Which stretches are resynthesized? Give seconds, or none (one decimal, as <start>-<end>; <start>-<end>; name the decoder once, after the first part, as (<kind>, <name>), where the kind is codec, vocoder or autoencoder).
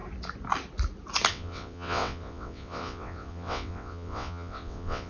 1.3-5.1 (vocoder, WaveNeXt)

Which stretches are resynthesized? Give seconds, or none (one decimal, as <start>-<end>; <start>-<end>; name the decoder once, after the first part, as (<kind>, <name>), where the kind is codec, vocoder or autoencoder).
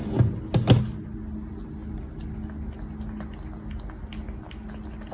none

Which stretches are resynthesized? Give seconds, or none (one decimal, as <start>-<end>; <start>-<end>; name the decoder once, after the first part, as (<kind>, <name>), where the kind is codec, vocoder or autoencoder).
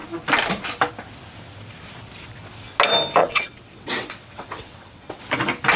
3.2-5.2 (vocoder, WaveNeXt)